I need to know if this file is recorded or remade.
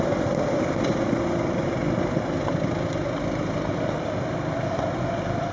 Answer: recorded